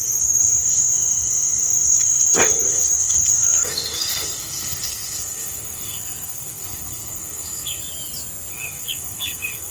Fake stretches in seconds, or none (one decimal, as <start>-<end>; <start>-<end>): 0.0-7.8; 8.5-9.7